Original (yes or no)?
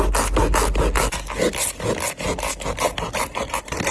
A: yes